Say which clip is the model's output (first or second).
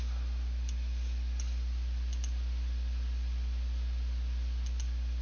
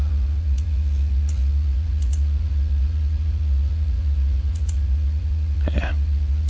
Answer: second